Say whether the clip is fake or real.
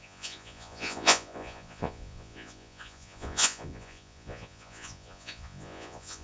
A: fake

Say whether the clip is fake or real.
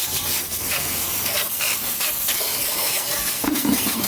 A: fake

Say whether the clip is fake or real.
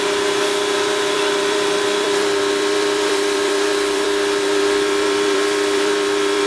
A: fake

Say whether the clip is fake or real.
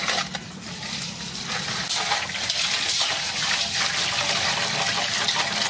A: real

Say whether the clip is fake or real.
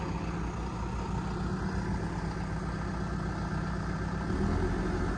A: real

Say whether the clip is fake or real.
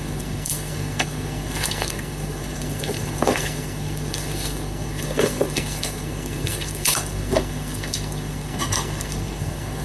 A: fake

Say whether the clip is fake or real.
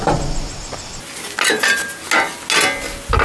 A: real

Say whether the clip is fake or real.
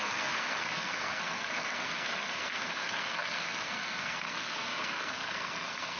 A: fake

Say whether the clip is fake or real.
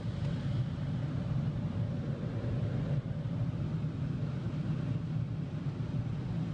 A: real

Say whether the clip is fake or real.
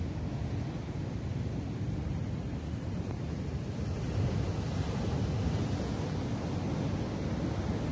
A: real